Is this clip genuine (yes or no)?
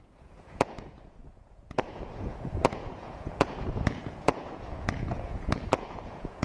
no